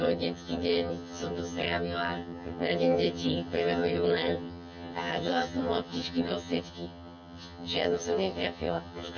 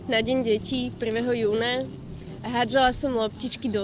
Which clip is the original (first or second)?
second